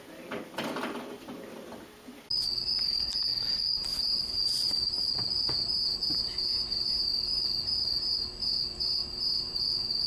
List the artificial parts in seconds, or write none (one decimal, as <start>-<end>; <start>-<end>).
3.3-5.6; 7.1-8.1